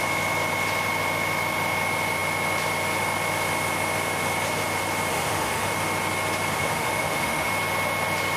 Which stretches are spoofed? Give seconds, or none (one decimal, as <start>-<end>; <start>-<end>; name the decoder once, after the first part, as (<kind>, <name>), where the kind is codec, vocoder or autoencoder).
5.1-5.7 (autoencoder, DAC-VAE); 6.5-7.5